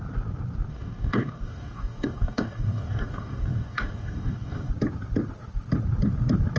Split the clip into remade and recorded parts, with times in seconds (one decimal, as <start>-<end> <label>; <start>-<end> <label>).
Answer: 0.0-0.7 recorded; 0.7-4.7 remade; 4.7-6.6 recorded